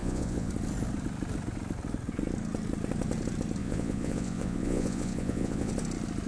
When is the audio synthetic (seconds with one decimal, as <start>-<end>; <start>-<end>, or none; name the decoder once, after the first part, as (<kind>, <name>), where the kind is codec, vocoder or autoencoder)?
0.0-0.5 (vocoder, Vocos); 3.6-5.7